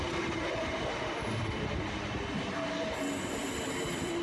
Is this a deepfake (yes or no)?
yes